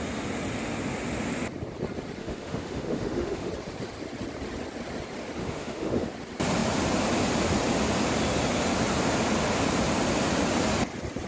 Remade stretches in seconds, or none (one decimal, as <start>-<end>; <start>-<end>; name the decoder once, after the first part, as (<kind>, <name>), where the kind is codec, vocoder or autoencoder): 2.2-3.5 (autoencoder, DAC-VAE); 5.4-6.1